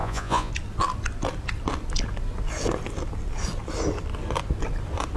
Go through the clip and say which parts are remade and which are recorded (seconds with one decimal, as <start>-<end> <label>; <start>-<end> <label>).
0.0-0.5 remade; 0.5-5.2 recorded